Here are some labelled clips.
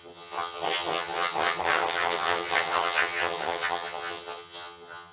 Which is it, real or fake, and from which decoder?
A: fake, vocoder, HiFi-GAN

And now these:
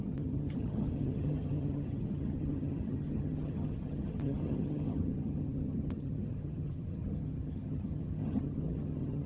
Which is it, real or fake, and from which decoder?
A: fake, vocoder, HiFi-GAN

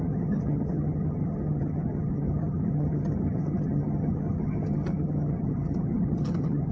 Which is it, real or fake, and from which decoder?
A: fake, vocoder, HiFi-GAN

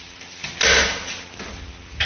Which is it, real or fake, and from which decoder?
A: real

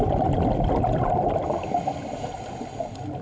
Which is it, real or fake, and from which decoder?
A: real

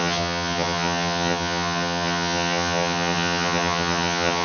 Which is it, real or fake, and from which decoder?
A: fake, vocoder, HiFi-GAN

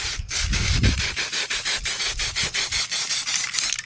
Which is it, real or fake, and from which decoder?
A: real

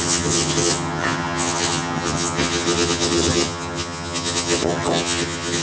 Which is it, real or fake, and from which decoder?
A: fake, vocoder, HiFi-GAN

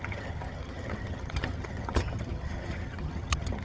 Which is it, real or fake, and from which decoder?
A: fake, vocoder, HiFi-GAN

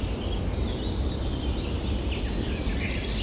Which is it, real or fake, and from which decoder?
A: real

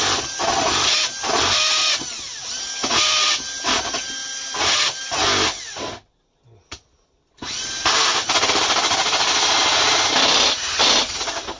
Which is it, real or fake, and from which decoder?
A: real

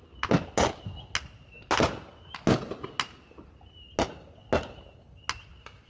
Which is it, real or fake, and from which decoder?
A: real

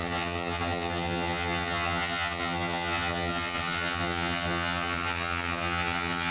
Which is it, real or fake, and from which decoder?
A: fake, vocoder, HiFi-GAN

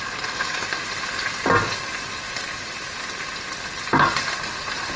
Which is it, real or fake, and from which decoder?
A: real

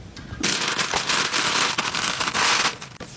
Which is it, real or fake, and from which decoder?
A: real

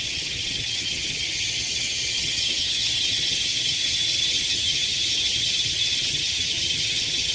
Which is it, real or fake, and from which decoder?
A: fake, vocoder, HiFi-GAN